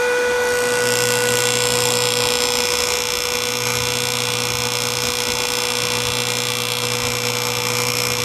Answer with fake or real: real